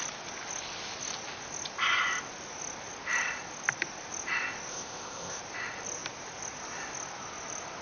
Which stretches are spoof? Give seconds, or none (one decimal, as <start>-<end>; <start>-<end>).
4.7-5.4